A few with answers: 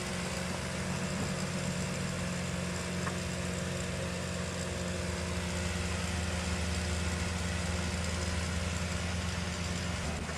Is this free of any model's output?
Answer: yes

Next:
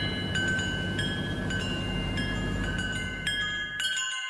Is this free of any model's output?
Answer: yes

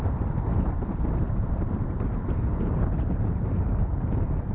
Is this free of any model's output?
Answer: no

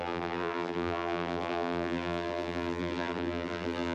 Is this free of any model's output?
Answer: no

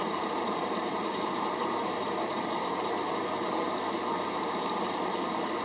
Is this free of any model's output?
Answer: no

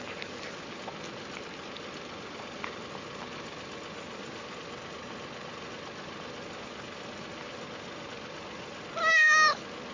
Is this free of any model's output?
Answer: yes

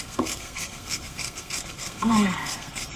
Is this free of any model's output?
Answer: no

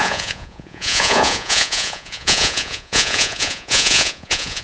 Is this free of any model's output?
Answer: no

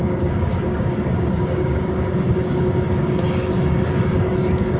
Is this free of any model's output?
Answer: no